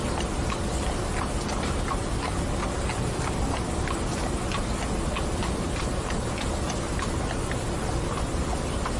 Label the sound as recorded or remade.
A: recorded